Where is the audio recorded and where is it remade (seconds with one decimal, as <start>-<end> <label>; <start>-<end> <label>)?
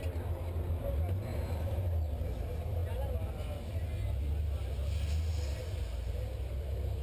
0.0-1.3 recorded; 1.3-1.8 remade; 1.8-7.0 recorded